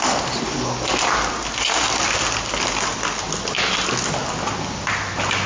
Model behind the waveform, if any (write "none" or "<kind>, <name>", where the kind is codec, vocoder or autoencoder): none